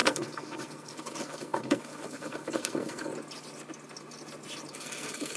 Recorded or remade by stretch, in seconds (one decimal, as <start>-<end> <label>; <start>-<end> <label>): 0.0-3.1 remade; 3.1-4.7 recorded; 4.7-5.4 remade